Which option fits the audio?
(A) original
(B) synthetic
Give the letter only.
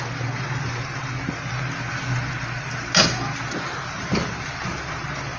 A